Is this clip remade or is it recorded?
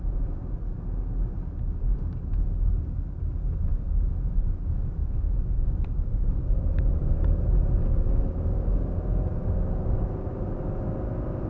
recorded